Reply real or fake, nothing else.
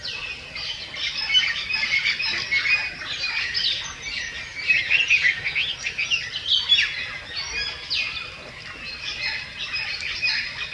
real